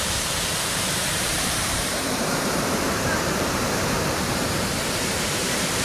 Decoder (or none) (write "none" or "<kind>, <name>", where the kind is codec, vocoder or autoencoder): vocoder, BigVGAN v2